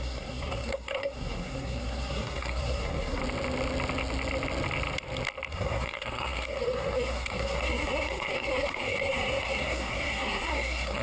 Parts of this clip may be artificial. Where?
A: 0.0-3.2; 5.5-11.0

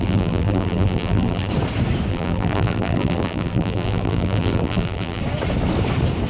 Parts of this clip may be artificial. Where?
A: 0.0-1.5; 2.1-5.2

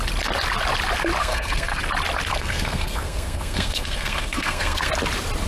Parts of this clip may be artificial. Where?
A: 1.2-1.8; 2.3-4.9